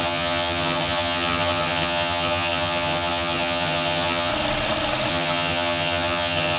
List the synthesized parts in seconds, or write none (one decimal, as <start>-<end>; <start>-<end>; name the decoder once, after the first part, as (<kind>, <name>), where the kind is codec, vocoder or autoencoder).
0.0-4.3 (vocoder, HiFi-GAN); 5.1-6.6